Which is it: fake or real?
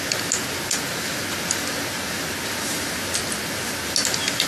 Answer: real